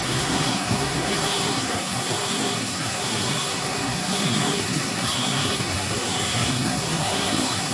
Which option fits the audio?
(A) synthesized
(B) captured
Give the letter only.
A